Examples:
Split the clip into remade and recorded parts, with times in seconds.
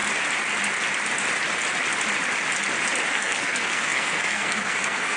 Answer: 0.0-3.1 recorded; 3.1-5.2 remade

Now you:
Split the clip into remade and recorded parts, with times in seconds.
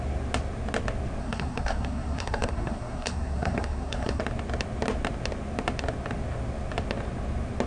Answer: 0.0-1.2 recorded; 1.2-4.2 remade; 4.2-7.7 recorded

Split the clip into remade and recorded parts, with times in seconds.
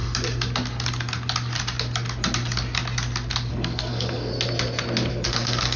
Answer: 0.0-3.5 recorded; 3.5-4.3 remade; 4.3-5.1 recorded; 5.1-5.8 remade